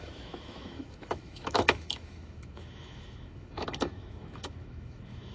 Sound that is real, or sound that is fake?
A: fake